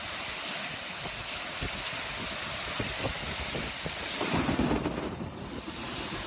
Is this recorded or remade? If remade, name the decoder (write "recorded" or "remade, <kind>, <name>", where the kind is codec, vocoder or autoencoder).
recorded